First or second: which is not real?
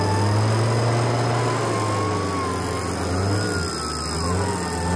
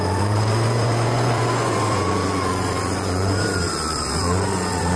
second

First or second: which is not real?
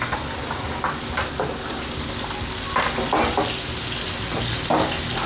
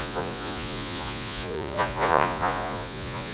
second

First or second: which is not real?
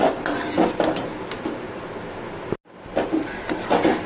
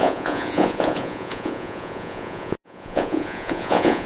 second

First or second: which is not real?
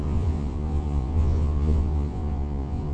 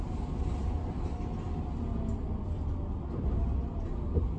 first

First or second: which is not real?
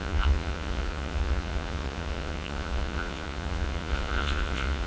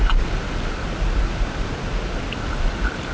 first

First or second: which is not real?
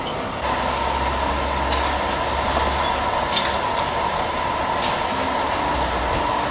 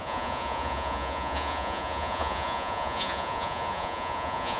second